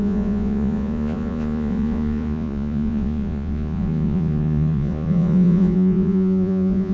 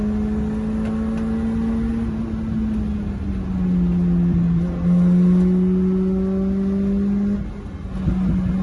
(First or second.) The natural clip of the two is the second